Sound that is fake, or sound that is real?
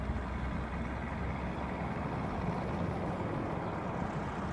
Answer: real